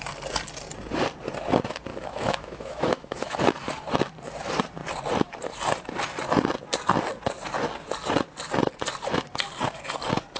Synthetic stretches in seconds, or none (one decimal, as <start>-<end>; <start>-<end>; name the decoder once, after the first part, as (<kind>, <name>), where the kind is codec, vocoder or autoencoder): 1.9-3.4 (autoencoder, DAC-VAE)